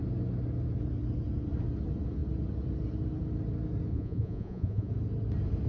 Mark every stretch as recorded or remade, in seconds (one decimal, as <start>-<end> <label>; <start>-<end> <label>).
0.0-3.9 recorded; 3.9-4.9 remade; 4.9-5.7 recorded